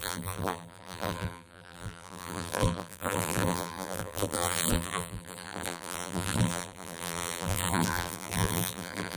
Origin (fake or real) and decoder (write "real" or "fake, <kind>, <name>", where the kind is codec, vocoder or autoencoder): fake, vocoder, BigVGAN v2